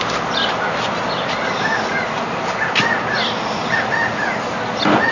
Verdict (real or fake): real